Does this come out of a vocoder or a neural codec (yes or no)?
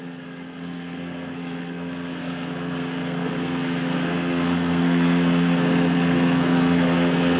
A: yes